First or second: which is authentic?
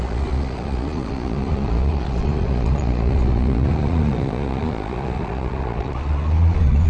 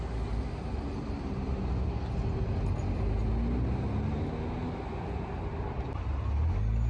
second